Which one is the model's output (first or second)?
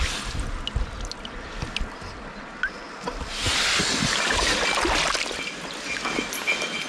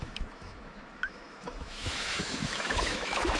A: second